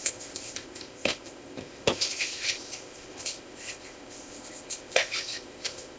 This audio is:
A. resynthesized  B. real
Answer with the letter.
A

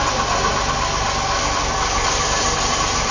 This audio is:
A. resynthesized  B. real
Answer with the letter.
B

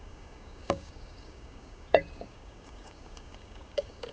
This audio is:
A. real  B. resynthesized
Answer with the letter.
B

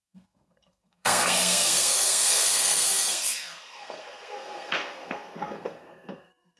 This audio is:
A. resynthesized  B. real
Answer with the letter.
A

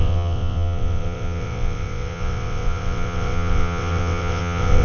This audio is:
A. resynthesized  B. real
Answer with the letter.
A